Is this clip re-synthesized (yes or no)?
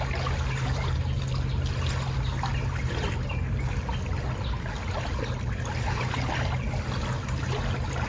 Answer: no